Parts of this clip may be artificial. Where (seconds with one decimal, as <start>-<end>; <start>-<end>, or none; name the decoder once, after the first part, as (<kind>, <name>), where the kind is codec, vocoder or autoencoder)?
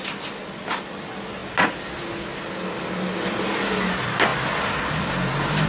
none